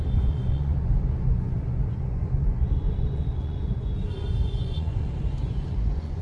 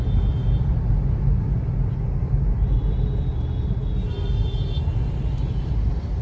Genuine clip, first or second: second